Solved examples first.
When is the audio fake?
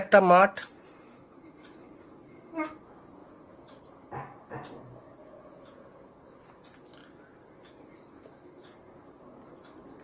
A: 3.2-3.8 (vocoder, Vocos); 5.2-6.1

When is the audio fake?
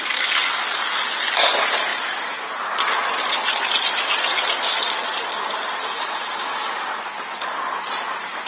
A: 5.8-6.7 (autoencoder, DAC-VAE)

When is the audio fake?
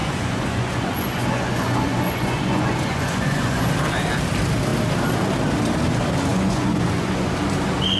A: 0.0-3.7 (vocoder, Vocos); 6.3-7.3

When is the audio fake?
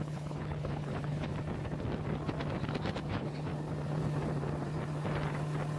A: 0.0-1.3 (codec, HILCodec); 3.1-3.5